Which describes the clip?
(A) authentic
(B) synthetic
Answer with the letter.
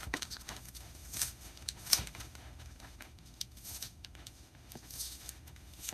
B